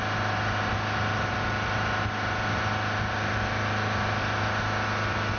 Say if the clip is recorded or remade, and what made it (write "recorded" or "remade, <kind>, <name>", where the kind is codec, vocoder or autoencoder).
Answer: recorded